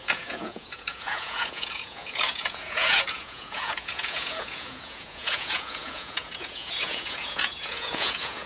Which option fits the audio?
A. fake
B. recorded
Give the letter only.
A